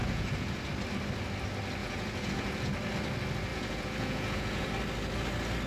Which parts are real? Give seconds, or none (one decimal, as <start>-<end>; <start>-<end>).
0.7-1.8; 2.7-3.5; 4.7-5.7